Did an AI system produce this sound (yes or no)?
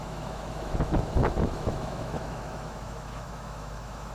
yes